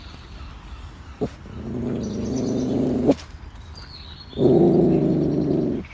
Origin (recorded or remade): recorded